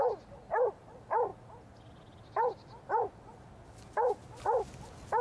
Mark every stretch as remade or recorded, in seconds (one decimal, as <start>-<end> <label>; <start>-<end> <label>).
0.0-5.2 recorded

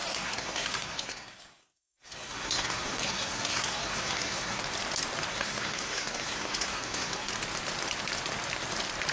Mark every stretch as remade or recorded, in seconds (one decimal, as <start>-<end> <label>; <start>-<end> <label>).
0.0-4.6 remade; 4.6-5.3 recorded; 5.3-7.3 remade; 7.3-9.1 recorded